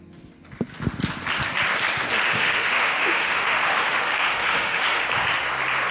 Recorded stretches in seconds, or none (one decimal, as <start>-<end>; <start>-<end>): 0.0-2.3; 5.0-5.9